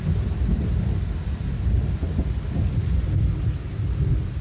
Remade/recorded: recorded